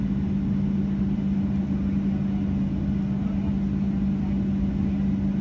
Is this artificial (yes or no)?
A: no